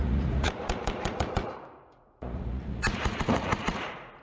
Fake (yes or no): yes